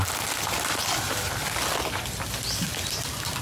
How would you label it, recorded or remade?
recorded